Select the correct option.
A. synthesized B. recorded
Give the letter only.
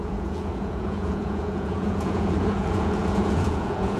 A